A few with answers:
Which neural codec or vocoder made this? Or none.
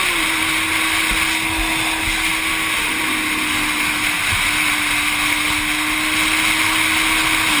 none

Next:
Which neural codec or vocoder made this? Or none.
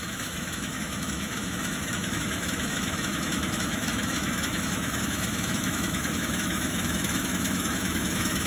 autoencoder, DAC-VAE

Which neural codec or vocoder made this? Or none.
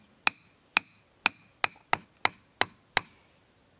none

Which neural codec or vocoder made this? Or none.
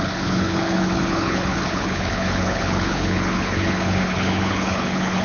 codec, HILCodec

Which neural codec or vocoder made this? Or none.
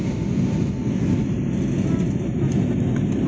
none